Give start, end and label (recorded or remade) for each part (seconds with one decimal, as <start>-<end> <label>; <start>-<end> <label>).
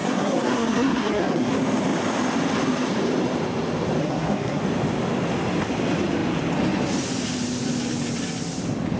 0.0-1.5 remade; 1.5-4.0 recorded; 4.0-4.6 remade; 4.6-9.0 recorded